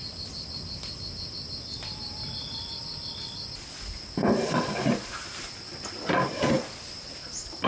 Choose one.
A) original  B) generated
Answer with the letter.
A